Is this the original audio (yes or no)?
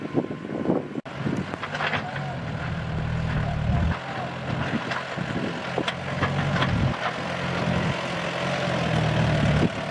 yes